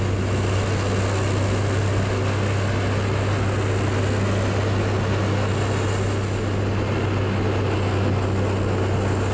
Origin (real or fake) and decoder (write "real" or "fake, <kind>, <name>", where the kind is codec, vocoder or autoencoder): real